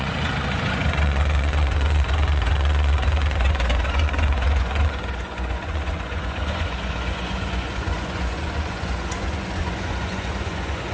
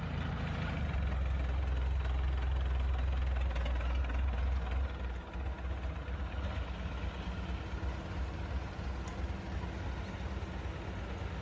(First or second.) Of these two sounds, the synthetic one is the first